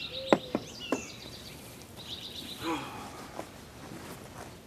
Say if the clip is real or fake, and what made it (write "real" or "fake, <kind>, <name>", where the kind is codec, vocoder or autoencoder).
real